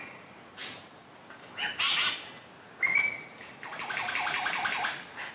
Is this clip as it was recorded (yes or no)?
yes